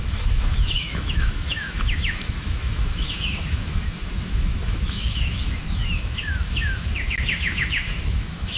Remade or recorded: remade